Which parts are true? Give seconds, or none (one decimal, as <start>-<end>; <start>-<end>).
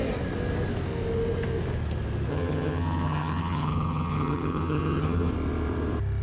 0.0-2.3; 5.3-6.2